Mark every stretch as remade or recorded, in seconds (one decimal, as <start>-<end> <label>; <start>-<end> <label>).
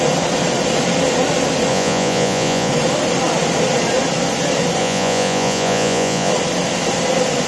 0.0-1.7 recorded; 1.7-2.7 remade; 2.7-4.8 recorded; 4.8-6.3 remade; 6.3-7.5 recorded